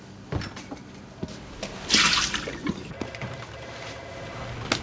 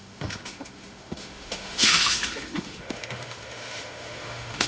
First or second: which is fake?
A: second